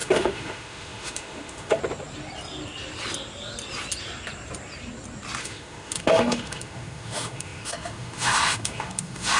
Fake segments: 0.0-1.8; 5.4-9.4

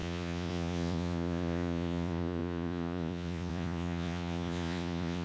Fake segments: 0.0-5.2

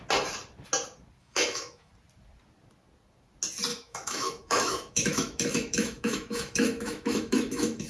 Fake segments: 1.2-1.9; 3.7-7.9

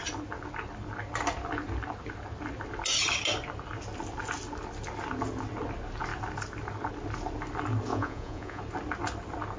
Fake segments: 7.9-8.6

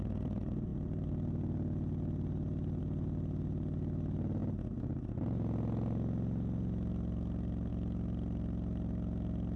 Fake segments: none

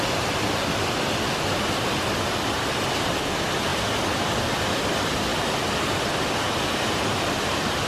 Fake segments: none